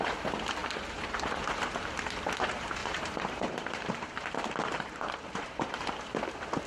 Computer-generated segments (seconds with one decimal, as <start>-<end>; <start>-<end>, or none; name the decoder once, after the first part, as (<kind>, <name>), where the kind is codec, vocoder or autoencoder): 0.6-2.1 (vocoder, BigVGAN v2); 2.8-5.9